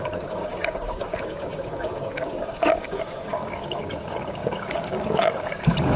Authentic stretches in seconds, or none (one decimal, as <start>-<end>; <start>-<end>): none